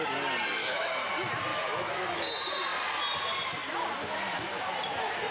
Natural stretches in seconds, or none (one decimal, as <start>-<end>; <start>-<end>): 0.0-0.6; 1.1-1.5; 2.2-5.3